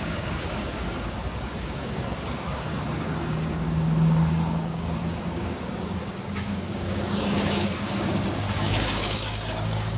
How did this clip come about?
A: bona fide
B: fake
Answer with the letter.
B